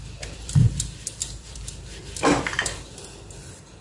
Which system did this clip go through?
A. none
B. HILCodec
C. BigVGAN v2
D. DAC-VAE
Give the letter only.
C